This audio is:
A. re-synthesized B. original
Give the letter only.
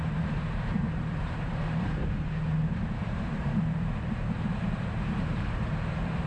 A